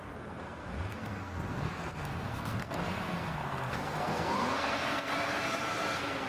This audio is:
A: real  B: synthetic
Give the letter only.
B